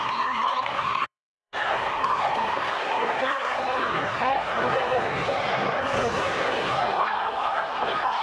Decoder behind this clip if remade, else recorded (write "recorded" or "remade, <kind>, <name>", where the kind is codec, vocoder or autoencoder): remade, codec, SNAC